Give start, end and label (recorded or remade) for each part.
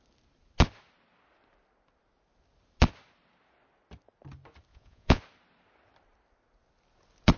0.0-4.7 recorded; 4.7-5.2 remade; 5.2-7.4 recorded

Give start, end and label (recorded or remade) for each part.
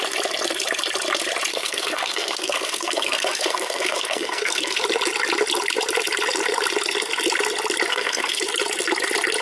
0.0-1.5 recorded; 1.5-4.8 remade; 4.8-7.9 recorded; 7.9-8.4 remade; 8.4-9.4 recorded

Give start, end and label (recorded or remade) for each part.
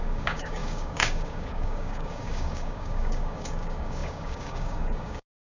0.0-5.4 remade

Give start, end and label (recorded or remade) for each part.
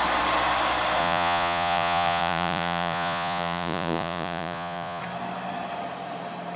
0.0-1.0 recorded; 1.0-5.0 remade; 5.0-6.6 recorded